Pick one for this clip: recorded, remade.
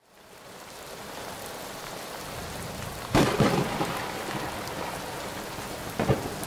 recorded